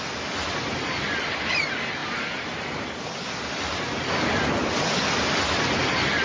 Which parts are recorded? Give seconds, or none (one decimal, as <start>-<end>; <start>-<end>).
0.0-6.2